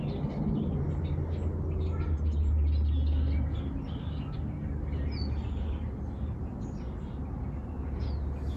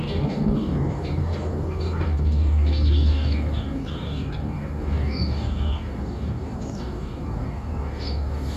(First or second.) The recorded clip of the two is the first